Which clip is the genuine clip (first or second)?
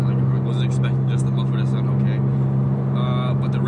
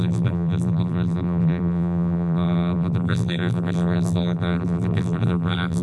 first